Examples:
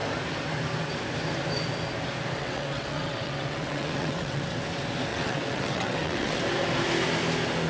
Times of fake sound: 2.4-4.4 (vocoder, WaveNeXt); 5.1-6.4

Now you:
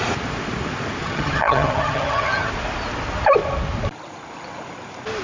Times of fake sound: 1.0-2.5 (vocoder, HiFi-GAN)

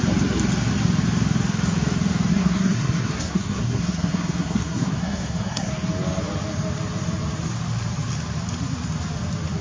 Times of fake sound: 2.3-5.7 (codec, SNAC)